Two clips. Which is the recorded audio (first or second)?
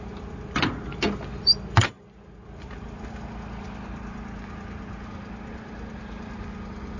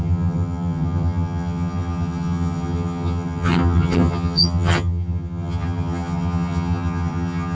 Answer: first